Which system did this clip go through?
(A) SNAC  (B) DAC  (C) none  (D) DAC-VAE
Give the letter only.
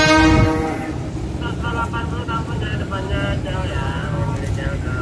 C